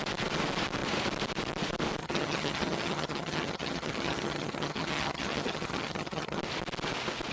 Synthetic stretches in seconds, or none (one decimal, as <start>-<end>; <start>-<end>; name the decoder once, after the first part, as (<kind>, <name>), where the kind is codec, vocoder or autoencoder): 2.0-6.4 (vocoder, HiFi-GAN)